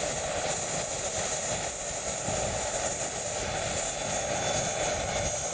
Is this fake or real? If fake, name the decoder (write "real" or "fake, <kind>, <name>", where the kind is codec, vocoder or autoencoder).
real